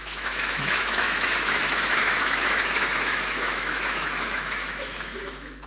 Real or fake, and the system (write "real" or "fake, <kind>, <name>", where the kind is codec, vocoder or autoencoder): fake, autoencoder, DAC-VAE